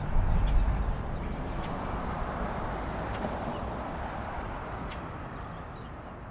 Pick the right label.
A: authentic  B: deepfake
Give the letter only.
A